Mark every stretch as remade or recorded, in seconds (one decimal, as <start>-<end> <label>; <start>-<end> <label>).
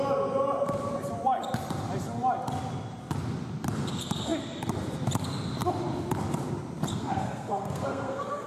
0.0-6.9 recorded; 6.9-8.5 remade